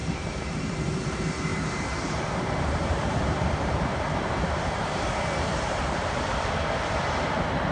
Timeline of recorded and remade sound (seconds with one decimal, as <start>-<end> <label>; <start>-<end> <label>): 0.0-0.7 remade; 0.7-1.5 recorded; 1.5-6.1 remade; 6.1-7.7 recorded